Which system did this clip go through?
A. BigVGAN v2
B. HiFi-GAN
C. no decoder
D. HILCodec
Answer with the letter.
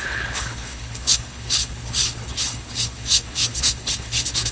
D